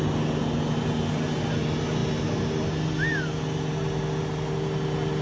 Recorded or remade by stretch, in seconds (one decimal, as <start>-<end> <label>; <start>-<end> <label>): 0.0-5.2 recorded